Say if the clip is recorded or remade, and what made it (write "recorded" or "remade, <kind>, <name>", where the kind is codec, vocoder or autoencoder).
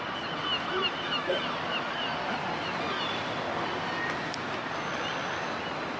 recorded